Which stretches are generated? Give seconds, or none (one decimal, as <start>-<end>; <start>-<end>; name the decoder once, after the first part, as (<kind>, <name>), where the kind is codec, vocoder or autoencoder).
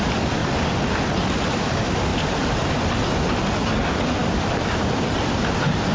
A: 0.4-1.0 (vocoder, BigVGAN v2); 2.1-3.6; 4.2-5.5